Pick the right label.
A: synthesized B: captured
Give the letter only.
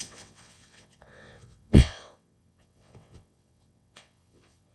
A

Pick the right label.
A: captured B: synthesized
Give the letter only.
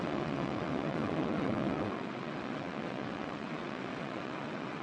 B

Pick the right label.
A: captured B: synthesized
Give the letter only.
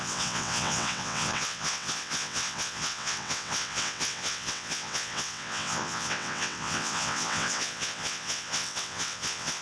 B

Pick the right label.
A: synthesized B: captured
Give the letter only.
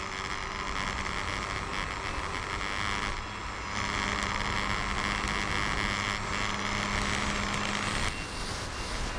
B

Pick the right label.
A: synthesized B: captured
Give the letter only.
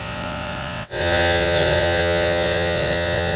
A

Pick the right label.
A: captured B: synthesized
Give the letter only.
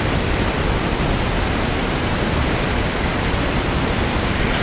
A